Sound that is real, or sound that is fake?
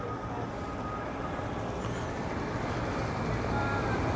real